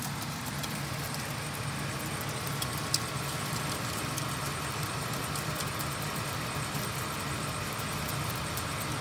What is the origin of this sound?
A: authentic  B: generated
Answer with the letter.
A